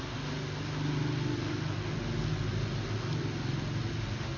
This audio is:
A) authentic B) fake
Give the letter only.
A